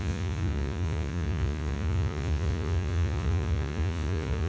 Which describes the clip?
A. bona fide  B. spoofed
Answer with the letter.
B